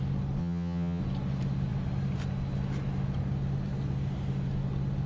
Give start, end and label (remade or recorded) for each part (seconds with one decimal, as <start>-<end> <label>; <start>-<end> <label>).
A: 0.0-0.4 recorded; 0.4-1.0 remade; 1.0-5.1 recorded